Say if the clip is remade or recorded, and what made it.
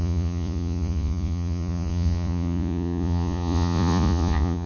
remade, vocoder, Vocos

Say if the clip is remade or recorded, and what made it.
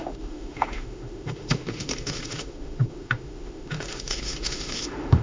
remade, autoencoder, DAC-VAE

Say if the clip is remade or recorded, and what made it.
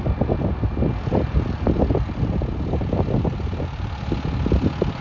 recorded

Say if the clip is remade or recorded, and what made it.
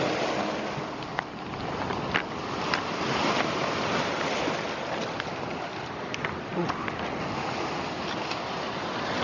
recorded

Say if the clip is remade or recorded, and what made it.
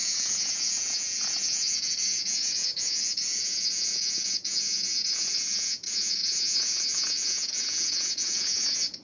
remade, vocoder, Vocos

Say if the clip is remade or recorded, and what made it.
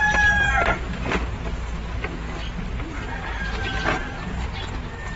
recorded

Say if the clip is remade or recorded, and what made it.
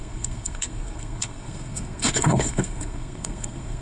remade, codec, SNAC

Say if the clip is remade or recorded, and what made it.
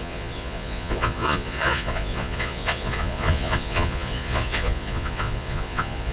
remade, vocoder, Vocos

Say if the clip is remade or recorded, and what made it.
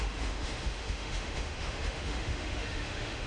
remade, autoencoder, DAC-VAE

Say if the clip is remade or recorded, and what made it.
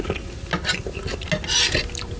recorded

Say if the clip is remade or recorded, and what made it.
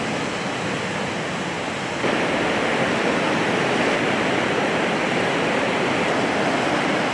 recorded